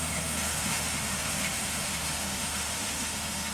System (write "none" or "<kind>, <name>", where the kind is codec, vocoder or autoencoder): autoencoder, DAC-VAE